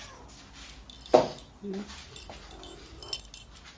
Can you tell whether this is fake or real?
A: real